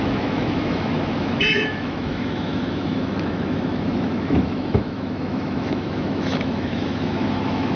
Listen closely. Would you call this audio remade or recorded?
remade